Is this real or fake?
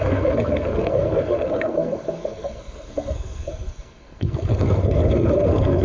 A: fake